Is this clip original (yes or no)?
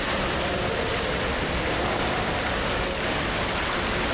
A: yes